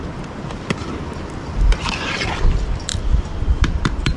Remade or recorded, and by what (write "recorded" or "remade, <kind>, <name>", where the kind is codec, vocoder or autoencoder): remade, vocoder, BigVGAN v2